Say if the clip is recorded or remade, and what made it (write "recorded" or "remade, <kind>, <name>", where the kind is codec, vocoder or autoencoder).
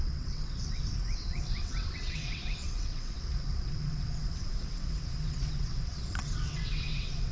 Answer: remade, vocoder, WaveNeXt